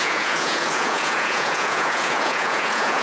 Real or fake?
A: fake